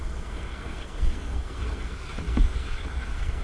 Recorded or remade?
remade